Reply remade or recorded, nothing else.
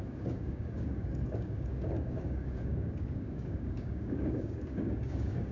remade